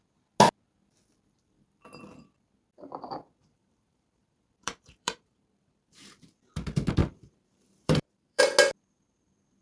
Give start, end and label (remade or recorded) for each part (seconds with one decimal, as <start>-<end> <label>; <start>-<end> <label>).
0.0-3.4 recorded; 3.4-6.4 remade; 6.4-7.0 recorded; 7.0-8.4 remade; 8.4-9.6 recorded